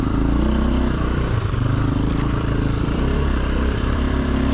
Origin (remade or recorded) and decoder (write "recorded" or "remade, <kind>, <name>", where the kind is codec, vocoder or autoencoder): remade, vocoder, BigVGAN v2